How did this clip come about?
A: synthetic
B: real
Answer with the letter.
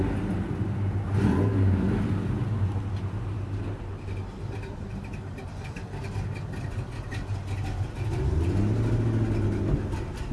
B